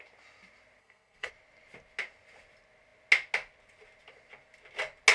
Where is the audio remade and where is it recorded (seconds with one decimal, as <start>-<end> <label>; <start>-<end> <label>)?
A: 0.0-0.8 recorded; 0.8-1.3 remade; 1.3-5.1 recorded